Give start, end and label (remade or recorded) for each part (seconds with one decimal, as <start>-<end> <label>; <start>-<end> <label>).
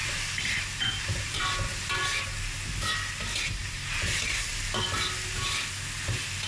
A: 0.0-1.4 remade; 1.4-3.6 recorded; 3.6-4.5 remade; 4.5-6.5 recorded